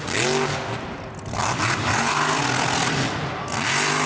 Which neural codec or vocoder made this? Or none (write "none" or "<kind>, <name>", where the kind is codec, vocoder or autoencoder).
none